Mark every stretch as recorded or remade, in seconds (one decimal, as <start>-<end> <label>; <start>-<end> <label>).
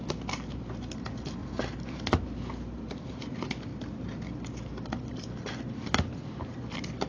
0.0-1.4 recorded; 1.4-2.0 remade; 2.0-7.1 recorded